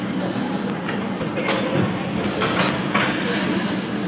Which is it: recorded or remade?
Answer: recorded